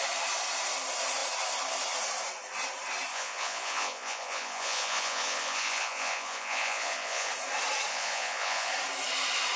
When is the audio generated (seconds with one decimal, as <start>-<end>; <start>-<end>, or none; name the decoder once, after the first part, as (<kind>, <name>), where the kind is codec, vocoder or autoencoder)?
3.1-7.3 (vocoder, Vocos); 7.9-8.7